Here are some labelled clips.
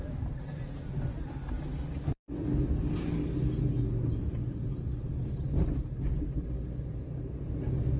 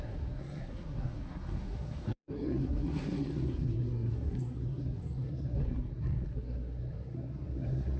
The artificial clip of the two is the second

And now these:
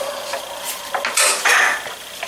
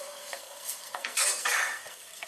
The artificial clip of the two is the second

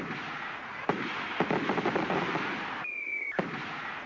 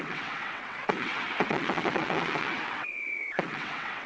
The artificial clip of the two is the second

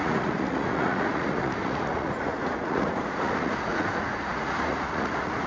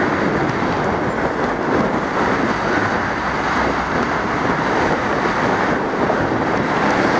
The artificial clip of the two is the first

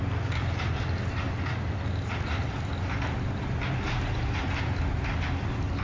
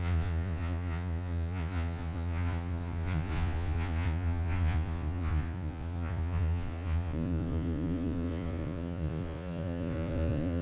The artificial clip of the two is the second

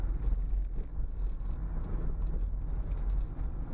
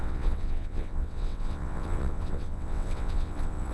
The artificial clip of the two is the second